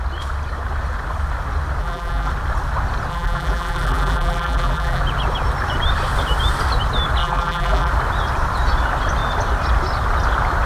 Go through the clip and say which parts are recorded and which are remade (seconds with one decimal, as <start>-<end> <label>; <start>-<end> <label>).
0.0-1.8 recorded; 1.8-2.3 remade; 2.3-3.1 recorded; 3.1-5.0 remade; 5.0-7.2 recorded; 7.2-7.9 remade; 7.9-10.7 recorded